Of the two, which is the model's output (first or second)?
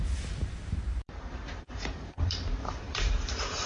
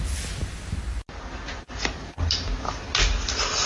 first